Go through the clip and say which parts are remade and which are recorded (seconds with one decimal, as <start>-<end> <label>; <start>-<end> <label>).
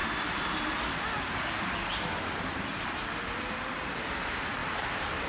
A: 0.0-5.3 remade